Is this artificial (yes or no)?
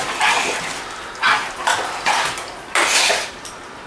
no